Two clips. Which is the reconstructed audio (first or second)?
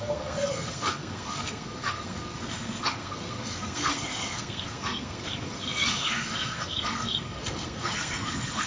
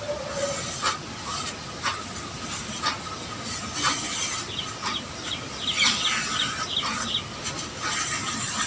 first